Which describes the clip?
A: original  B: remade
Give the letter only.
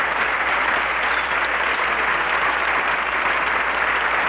A